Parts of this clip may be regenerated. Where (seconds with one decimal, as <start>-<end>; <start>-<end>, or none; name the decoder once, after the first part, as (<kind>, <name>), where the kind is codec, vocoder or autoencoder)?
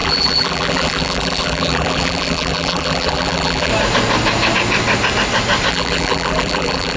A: 0.0-3.7 (vocoder, BigVGAN v2); 5.7-7.0